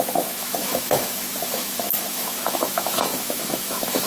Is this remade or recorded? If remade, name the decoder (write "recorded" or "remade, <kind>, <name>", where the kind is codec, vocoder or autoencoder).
remade, autoencoder, DAC-VAE